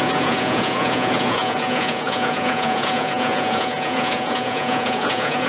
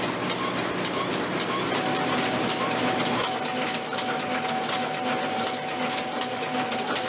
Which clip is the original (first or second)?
second